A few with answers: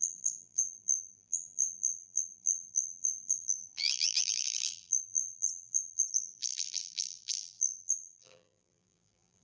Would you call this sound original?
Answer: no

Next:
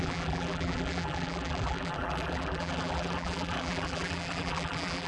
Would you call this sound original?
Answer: no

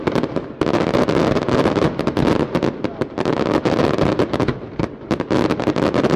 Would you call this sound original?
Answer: yes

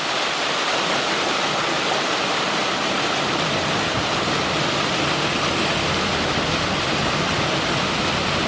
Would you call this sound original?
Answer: no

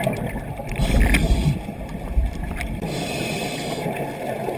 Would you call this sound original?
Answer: no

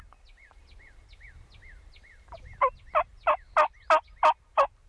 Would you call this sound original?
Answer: yes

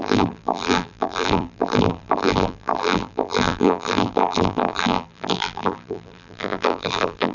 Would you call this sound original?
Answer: no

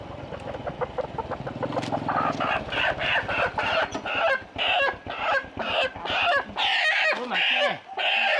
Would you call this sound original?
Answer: yes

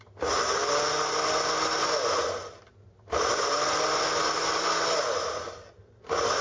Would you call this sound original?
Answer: yes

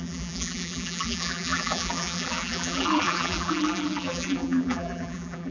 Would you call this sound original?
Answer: no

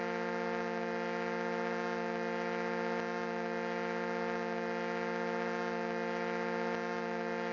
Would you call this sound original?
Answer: yes